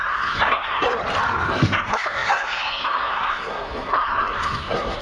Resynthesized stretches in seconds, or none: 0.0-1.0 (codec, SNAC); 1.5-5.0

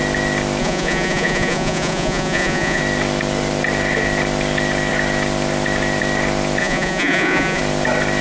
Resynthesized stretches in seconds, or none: 0.6-2.8 (vocoder, Vocos); 6.6-7.6